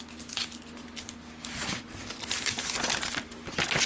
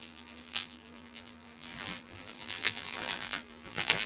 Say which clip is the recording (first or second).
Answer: first